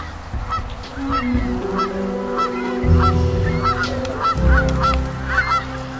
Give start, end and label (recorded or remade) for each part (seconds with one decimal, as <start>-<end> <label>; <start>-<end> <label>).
0.0-6.0 recorded